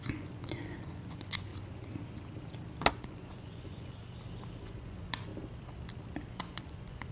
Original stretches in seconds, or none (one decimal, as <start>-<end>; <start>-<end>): 1.5-2.9; 4.0-4.6; 5.3-6.3